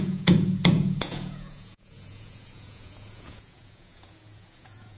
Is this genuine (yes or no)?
no